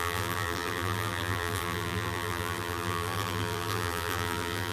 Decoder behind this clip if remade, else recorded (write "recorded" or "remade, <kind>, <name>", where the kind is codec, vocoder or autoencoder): remade, vocoder, BigVGAN v2